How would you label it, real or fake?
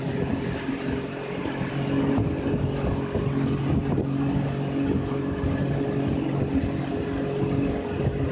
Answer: real